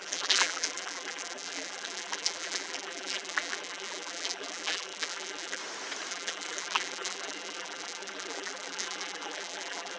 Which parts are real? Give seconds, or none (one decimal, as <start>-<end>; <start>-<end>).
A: 5.6-6.1